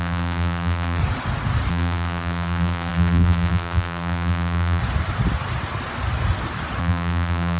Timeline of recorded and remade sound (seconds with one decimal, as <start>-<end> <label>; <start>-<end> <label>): 0.0-1.0 remade; 1.0-1.7 recorded; 1.7-4.8 remade; 4.8-6.8 recorded; 6.8-7.6 remade

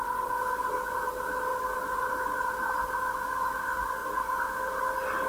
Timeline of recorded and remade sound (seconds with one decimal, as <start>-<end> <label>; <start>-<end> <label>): 0.0-1.5 recorded; 1.5-2.0 remade; 2.0-5.3 recorded

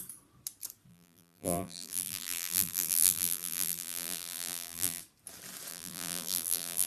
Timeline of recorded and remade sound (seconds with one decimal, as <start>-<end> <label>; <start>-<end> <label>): 0.0-0.9 recorded; 0.9-5.0 remade; 5.0-5.7 recorded; 5.7-6.9 remade

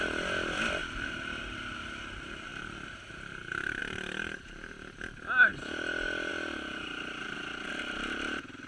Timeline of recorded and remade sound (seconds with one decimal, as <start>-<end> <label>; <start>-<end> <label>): 0.0-0.8 recorded; 0.8-1.4 remade; 1.4-2.5 recorded; 2.5-3.8 remade; 3.8-8.7 recorded

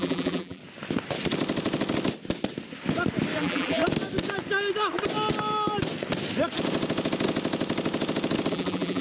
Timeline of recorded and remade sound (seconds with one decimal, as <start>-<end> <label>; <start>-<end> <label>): 0.0-0.6 remade; 0.6-3.4 recorded; 3.4-3.8 remade; 3.8-8.5 recorded; 8.5-9.0 remade